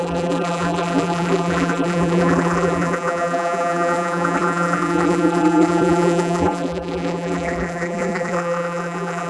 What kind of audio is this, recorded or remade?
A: remade